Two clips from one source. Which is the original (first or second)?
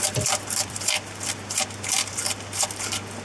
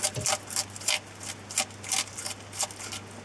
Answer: second